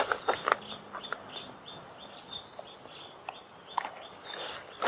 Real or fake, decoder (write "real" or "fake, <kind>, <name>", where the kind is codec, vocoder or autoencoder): real